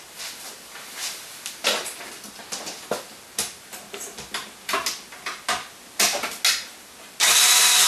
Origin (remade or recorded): recorded